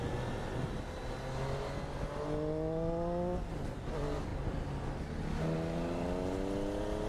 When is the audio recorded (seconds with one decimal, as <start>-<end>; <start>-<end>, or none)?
0.0-7.1